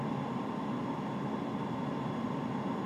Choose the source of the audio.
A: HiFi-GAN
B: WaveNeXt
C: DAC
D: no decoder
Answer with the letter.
D